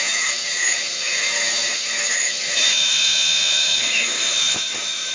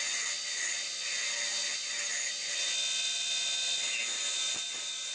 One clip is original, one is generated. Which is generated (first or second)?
first